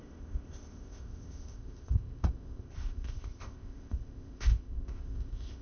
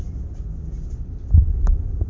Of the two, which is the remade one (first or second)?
first